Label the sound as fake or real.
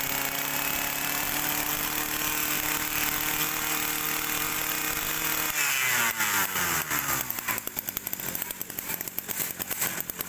real